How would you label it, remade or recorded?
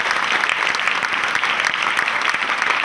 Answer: recorded